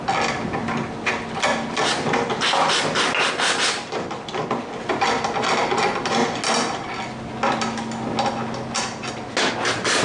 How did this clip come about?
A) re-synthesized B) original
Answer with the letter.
B